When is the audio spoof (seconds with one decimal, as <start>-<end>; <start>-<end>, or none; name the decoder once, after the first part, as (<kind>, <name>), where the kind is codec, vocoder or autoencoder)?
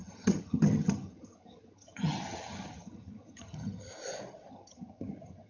0.0-3.9 (vocoder, HiFi-GAN); 4.5-5.5